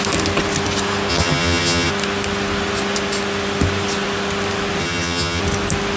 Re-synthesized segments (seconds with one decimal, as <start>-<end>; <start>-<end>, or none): 1.1-1.9; 4.8-5.4